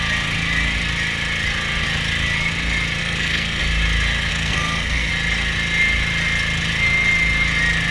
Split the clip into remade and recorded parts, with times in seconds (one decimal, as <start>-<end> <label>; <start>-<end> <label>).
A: 0.0-3.0 recorded; 3.0-3.6 remade; 3.6-4.3 recorded; 4.3-5.1 remade; 5.1-7.9 recorded